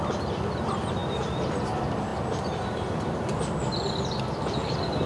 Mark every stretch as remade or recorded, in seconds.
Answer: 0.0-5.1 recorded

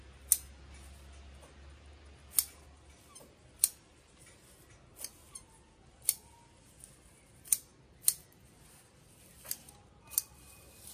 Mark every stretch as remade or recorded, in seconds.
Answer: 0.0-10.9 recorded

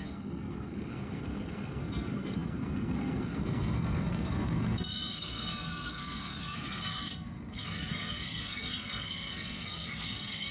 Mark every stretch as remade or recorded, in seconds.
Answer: 0.0-10.5 remade